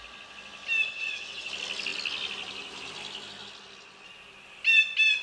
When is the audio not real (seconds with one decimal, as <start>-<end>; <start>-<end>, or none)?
0.9-1.5